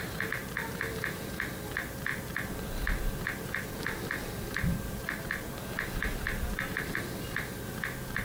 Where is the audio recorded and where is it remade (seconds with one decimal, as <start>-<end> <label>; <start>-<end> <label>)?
0.0-8.2 recorded